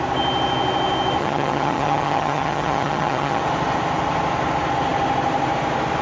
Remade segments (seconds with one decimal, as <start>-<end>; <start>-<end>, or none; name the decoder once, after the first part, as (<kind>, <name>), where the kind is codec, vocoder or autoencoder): 1.2-3.4 (vocoder, HiFi-GAN)